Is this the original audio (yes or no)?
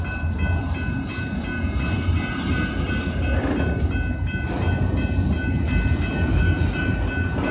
yes